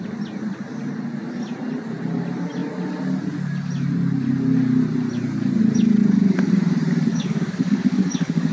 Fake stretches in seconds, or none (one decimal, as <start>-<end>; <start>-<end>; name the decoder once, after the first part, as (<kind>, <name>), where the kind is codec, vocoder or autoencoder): 6.0-6.5 (codec, DAC); 7.1-8.5